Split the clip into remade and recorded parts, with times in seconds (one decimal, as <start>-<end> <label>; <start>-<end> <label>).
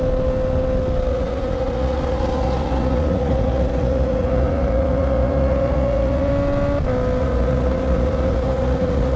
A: 0.0-1.1 recorded; 1.1-6.3 remade; 6.3-7.2 recorded; 7.2-9.2 remade